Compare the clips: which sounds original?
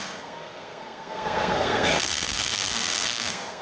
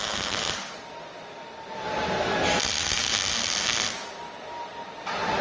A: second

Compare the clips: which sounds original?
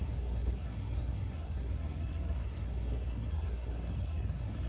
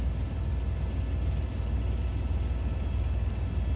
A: second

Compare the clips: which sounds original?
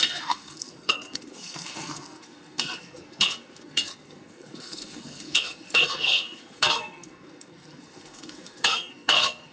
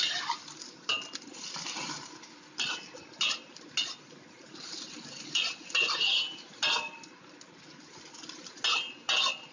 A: second